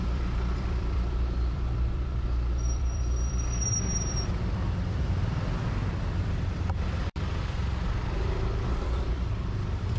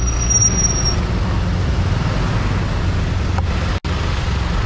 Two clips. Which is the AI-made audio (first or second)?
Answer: first